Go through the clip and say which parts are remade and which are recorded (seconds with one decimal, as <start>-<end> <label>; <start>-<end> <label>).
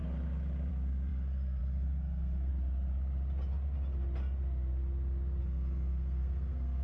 0.0-0.7 recorded; 0.7-2.5 remade; 2.5-5.4 recorded; 5.4-6.8 remade